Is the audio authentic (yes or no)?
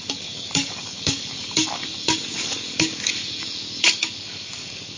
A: no